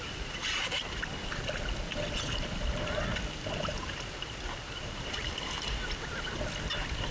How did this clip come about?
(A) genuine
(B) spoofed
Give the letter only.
A